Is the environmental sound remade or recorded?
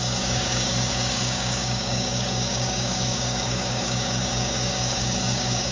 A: remade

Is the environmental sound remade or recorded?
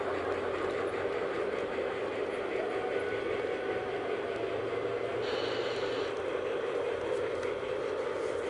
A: recorded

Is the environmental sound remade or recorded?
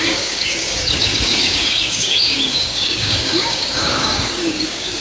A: remade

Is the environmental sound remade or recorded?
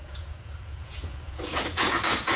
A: remade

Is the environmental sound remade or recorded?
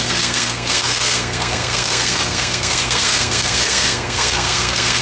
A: remade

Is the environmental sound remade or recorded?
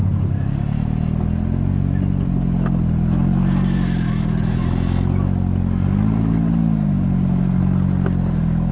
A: recorded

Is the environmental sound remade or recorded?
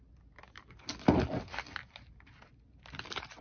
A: recorded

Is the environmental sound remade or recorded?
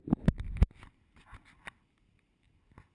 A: recorded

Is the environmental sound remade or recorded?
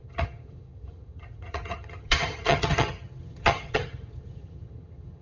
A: remade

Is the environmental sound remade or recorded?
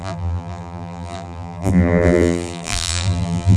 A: remade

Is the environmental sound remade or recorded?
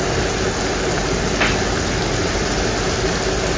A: recorded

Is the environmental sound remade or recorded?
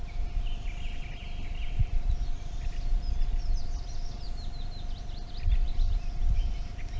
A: recorded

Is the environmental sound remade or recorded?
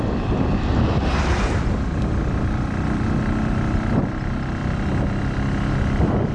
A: recorded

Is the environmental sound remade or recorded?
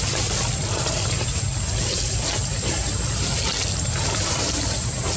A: recorded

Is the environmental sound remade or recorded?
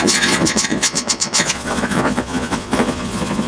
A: remade